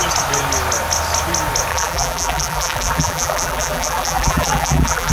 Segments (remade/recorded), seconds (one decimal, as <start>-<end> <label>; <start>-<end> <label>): 0.0-1.7 recorded; 1.7-5.1 remade

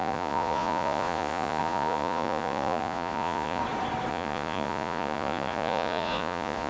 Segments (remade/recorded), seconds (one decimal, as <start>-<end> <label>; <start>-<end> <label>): 0.0-3.6 remade; 3.6-4.1 recorded; 4.1-6.7 remade

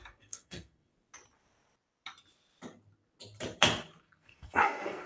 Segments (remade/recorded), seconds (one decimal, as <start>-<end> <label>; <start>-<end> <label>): 0.0-0.9 remade; 0.9-4.0 recorded; 4.0-5.1 remade

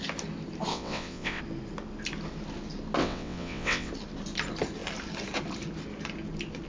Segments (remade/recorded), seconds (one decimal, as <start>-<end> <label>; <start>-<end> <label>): 0.0-0.7 recorded; 0.7-1.4 remade; 1.4-3.0 recorded; 3.0-3.9 remade; 3.9-6.7 recorded

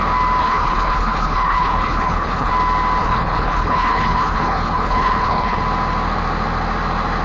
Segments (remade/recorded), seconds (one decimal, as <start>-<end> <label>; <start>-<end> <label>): 0.0-0.4 recorded; 0.4-2.5 remade; 2.5-3.0 recorded; 3.0-5.6 remade; 5.6-7.2 recorded